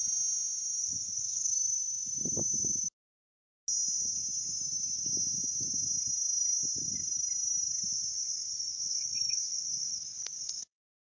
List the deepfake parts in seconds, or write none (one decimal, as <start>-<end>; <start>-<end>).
0.8-1.5; 8.1-11.2